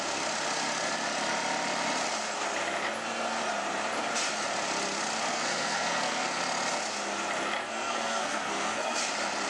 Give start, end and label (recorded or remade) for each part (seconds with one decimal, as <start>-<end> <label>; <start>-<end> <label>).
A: 0.0-5.3 recorded; 5.3-6.4 remade; 6.4-7.6 recorded; 7.6-9.0 remade; 9.0-9.5 recorded